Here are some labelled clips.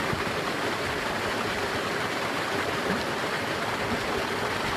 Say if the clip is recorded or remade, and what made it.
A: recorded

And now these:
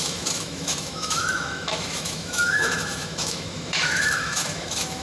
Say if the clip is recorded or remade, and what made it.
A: remade, autoencoder, DAC-VAE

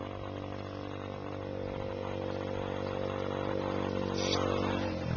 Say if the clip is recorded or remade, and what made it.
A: recorded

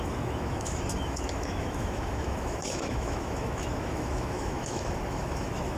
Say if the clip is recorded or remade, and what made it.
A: remade, autoencoder, DAC-VAE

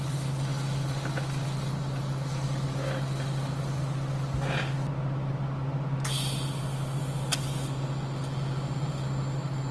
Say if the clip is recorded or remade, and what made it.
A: recorded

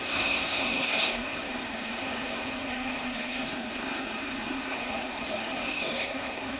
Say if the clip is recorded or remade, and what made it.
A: remade, codec, SNAC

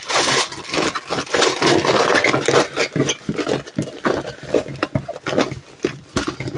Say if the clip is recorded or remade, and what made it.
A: recorded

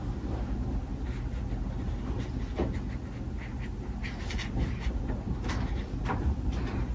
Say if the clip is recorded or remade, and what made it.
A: recorded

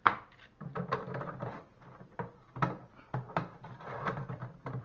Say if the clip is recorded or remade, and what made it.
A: remade, vocoder, BigVGAN v2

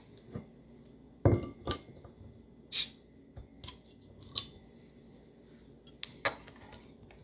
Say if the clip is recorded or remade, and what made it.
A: recorded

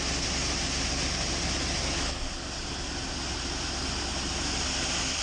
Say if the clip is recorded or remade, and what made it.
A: recorded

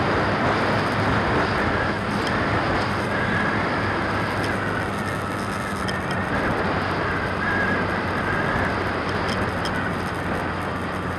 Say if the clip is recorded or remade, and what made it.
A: recorded